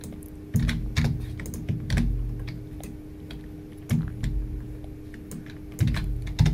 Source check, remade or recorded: recorded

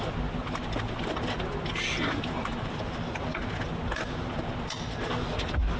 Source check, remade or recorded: recorded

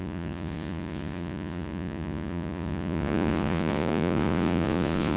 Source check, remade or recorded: remade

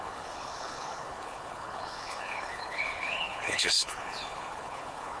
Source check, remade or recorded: remade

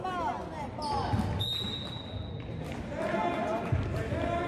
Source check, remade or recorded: recorded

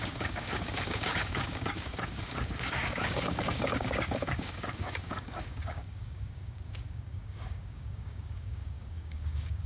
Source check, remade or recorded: remade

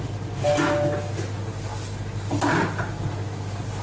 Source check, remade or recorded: recorded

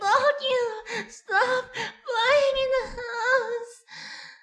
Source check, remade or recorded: recorded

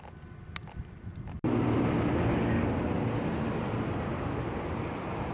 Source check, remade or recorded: recorded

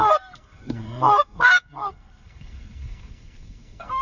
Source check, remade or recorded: remade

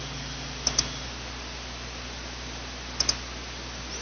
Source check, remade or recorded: recorded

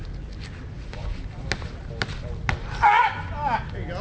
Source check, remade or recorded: recorded